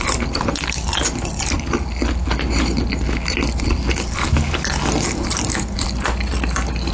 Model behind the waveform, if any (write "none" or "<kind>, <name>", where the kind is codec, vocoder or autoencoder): none